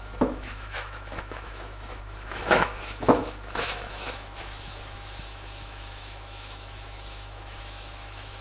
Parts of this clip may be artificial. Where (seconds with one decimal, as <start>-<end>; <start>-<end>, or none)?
0.0-8.4